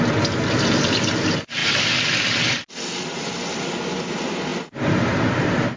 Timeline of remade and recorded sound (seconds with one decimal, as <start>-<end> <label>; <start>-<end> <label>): 0.0-5.8 recorded